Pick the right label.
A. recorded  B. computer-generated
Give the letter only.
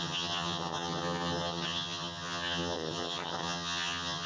B